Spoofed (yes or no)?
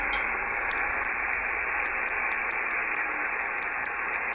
no